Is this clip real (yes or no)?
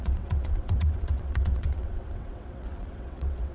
no